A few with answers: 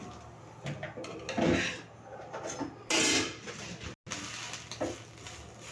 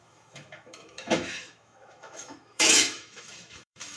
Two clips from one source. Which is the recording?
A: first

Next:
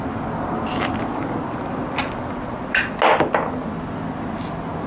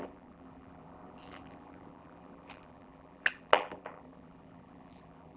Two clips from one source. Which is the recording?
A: first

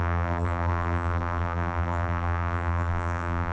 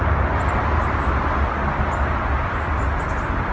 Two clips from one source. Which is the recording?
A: second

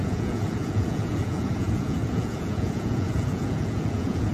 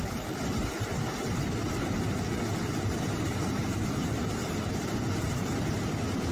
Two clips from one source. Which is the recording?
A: second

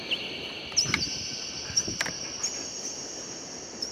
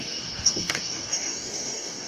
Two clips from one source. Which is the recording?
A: first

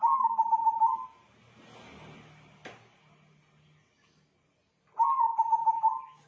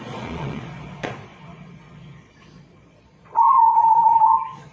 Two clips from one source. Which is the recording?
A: first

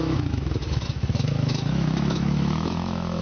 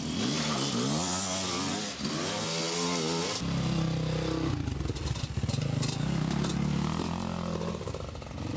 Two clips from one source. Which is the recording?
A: second